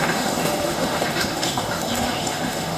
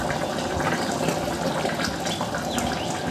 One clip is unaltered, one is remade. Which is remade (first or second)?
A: first